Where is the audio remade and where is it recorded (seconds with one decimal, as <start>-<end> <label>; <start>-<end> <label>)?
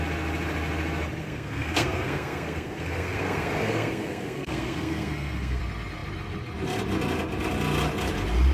0.0-1.2 recorded; 1.2-5.6 remade; 5.6-8.5 recorded